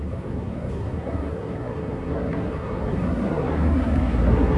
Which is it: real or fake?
fake